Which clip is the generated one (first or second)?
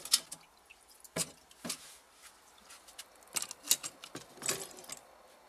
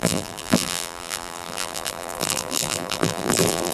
second